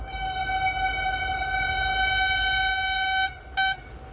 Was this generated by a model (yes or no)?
no